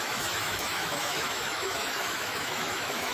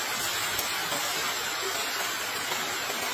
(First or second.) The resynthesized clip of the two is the first